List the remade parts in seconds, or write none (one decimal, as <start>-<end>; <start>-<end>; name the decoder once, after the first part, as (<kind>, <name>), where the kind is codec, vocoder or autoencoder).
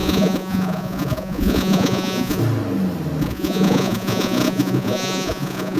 0.0-2.4 (vocoder, Vocos); 3.2-5.8